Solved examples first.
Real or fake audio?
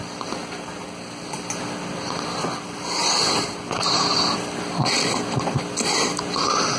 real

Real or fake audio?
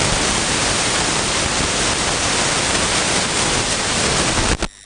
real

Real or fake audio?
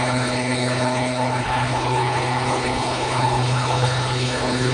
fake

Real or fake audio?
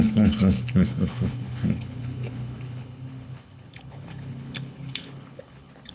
fake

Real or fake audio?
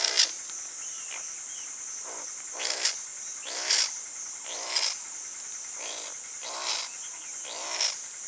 real